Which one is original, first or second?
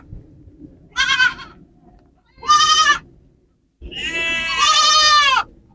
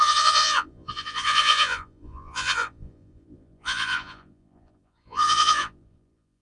first